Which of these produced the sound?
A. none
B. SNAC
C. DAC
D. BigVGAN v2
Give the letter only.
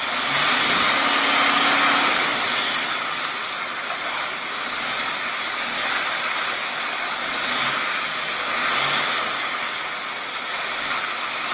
D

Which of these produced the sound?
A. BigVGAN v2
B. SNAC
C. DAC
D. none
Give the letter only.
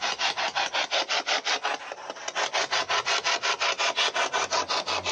D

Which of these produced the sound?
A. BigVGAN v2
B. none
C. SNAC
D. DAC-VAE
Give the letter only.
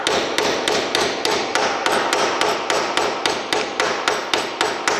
B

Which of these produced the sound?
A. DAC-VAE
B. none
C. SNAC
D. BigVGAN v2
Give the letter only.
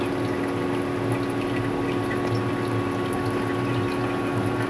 B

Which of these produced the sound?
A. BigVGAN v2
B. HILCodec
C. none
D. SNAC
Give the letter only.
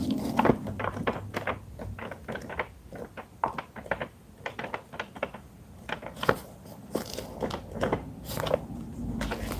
C